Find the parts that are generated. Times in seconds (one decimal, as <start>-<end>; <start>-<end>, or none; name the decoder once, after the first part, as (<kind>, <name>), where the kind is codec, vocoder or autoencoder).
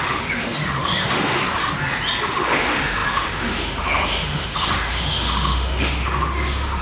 0.0-1.4 (autoencoder, DAC-VAE); 2.3-6.8